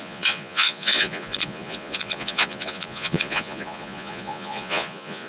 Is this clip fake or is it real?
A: fake